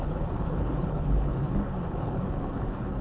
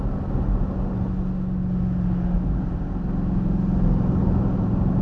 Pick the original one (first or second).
second